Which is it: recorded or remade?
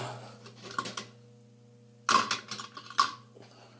recorded